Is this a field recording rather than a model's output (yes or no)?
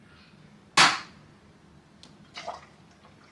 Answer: yes